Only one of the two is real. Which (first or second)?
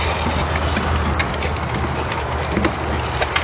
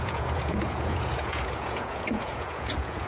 first